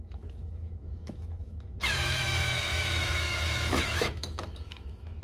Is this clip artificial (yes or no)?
yes